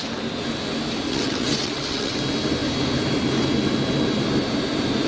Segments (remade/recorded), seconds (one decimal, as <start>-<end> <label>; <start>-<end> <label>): 0.0-1.1 recorded; 1.1-2.2 remade; 2.2-5.1 recorded